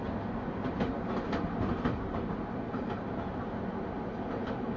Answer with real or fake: real